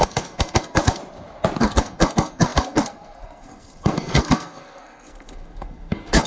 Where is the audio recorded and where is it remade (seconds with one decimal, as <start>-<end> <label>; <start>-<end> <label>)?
0.0-1.0 remade; 1.0-1.6 recorded; 1.6-6.3 remade